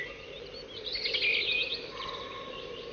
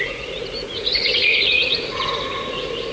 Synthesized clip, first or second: second